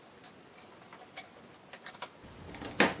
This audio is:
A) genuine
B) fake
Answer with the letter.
A